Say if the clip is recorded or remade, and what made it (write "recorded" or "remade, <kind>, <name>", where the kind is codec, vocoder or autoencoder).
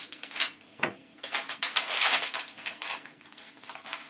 remade, codec, SNAC